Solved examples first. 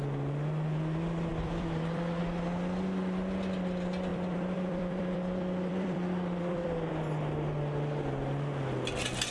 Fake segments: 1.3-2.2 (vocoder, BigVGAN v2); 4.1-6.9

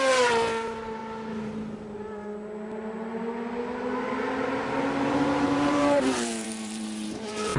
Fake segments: 0.0-1.0 (vocoder, BigVGAN v2); 5.0-7.6

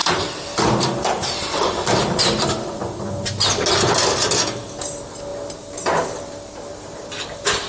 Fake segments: 0.0-2.8 (vocoder, BigVGAN v2); 4.0-5.3; 6.0-7.7

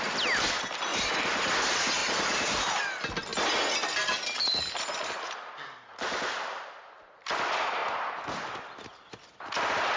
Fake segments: 0.9-1.5 (vocoder, BigVGAN v2); 2.0-2.8

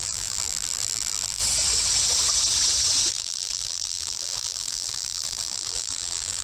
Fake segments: 0.0-1.4 (vocoder, BigVGAN v2); 3.1-6.4

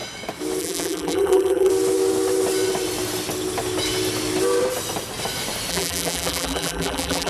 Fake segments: 0.6-1.7 (vocoder, BigVGAN v2); 5.7-7.3

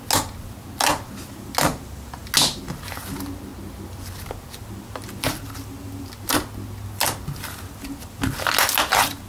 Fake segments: none

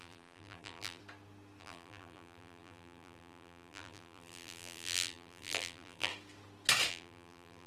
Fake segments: 0.0-1.0 (vocoder, BigVGAN v2); 1.6-6.1; 6.9-7.7